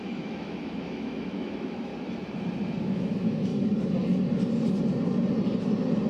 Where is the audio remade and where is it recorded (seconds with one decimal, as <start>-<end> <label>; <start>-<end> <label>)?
0.0-1.9 remade; 1.9-2.8 recorded; 2.8-3.5 remade; 3.5-6.1 recorded